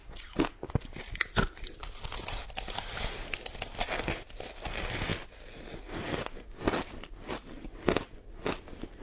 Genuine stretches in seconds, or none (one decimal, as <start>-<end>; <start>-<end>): 0.0-9.0